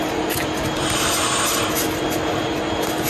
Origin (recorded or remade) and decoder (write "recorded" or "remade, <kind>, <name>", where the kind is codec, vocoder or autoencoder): recorded